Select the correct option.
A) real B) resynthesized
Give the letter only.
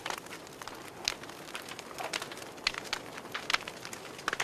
A